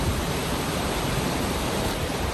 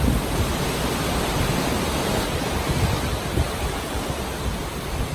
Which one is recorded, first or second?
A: second